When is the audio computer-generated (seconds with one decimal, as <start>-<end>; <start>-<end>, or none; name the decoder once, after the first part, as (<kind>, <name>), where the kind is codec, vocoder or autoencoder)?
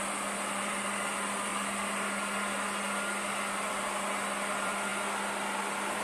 0.0-1.5 (vocoder, BigVGAN v2); 3.7-4.9